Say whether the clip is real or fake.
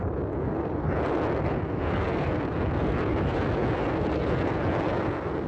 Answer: real